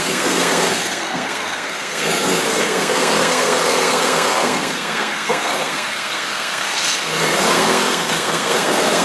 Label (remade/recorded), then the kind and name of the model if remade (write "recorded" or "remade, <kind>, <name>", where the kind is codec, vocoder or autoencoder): remade, codec, SNAC